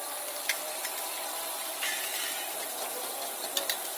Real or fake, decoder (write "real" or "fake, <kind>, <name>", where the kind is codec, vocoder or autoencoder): real